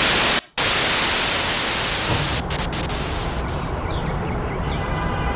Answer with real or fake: real